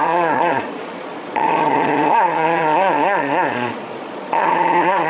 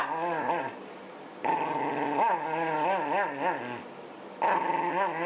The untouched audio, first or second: second